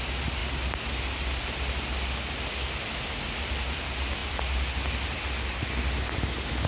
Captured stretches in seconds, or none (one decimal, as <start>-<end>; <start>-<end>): 0.0-6.7